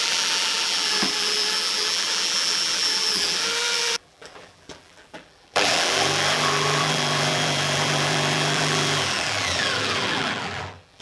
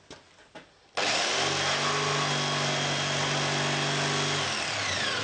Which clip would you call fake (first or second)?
first